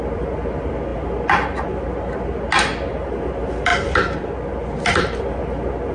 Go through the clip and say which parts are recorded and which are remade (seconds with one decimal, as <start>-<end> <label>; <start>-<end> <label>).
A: 0.0-5.9 recorded